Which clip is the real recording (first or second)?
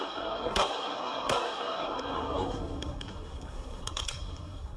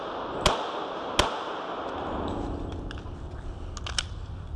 second